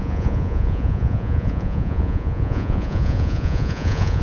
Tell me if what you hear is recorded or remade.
remade